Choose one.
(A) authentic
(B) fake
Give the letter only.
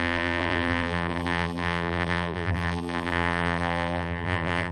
B